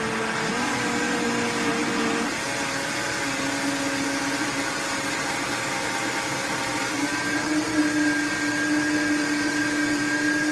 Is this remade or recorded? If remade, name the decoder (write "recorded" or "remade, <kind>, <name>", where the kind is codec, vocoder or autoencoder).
recorded